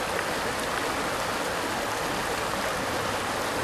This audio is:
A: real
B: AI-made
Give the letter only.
A